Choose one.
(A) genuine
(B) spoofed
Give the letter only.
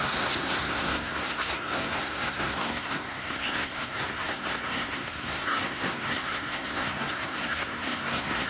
B